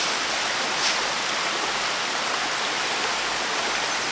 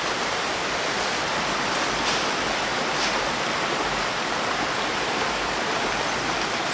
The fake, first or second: second